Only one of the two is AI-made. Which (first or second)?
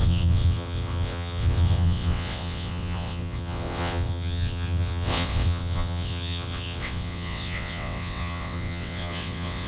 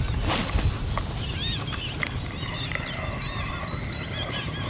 first